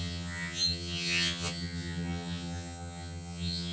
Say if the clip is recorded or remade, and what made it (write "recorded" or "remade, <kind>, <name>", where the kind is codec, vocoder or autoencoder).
remade, vocoder, HiFi-GAN